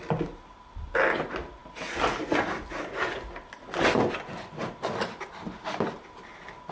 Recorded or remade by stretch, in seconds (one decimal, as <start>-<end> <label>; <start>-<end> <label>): 0.0-6.7 recorded